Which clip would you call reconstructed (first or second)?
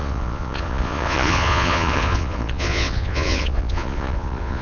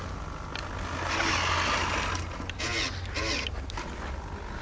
first